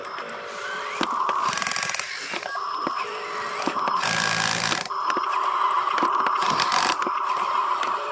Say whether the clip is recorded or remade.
recorded